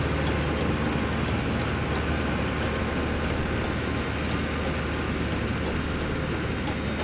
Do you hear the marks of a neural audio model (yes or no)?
no